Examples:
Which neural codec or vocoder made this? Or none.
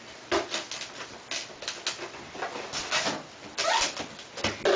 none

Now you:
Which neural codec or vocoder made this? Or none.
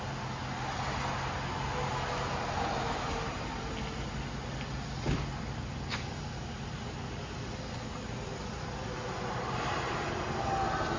none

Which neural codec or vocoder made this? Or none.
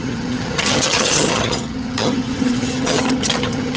vocoder, HiFi-GAN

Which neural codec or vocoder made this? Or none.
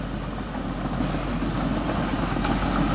none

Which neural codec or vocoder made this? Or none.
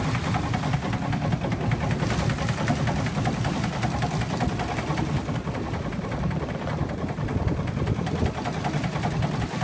none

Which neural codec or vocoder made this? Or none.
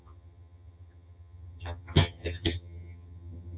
vocoder, HiFi-GAN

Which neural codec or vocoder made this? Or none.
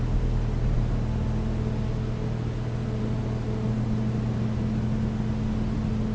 none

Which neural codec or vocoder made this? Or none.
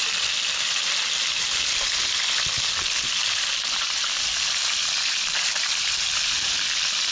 none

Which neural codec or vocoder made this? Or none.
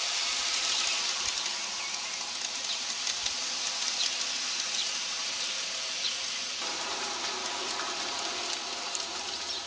none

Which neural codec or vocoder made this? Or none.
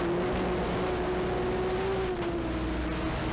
none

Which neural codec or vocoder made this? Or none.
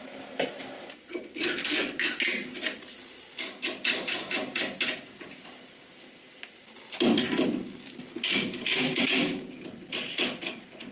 none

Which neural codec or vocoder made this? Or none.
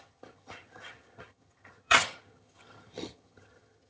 vocoder, HiFi-GAN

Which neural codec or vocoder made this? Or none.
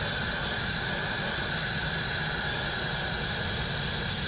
none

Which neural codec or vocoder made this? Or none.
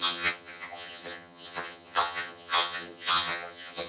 vocoder, HiFi-GAN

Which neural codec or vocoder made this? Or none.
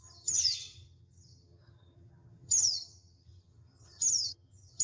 vocoder, HiFi-GAN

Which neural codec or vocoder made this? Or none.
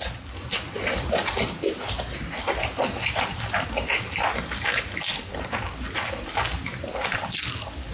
none